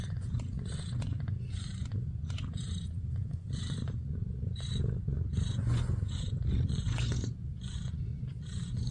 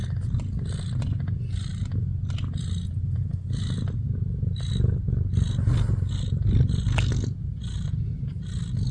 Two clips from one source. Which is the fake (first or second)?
first